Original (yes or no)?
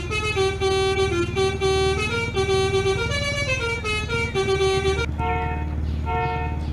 yes